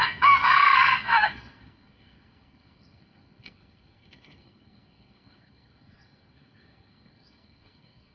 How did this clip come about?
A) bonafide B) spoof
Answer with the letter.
B